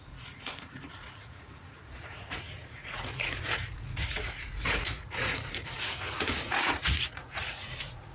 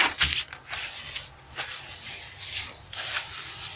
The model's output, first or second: first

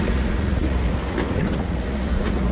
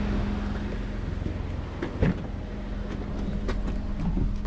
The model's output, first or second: first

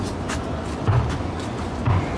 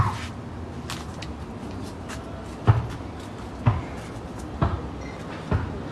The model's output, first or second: first